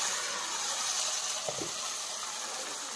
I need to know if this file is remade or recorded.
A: recorded